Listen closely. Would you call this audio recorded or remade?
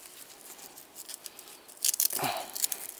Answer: recorded